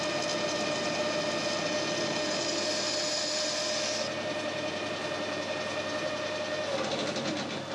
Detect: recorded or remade recorded